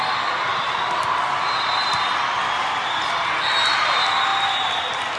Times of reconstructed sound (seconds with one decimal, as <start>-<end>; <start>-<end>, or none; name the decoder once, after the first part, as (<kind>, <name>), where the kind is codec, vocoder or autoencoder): none